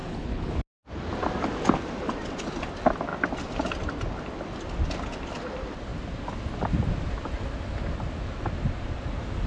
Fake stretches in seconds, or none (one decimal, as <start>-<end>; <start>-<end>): 0.0-0.5